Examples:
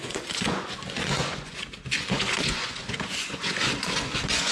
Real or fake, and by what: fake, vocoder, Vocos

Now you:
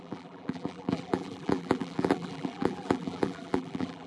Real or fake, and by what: fake, vocoder, BigVGAN v2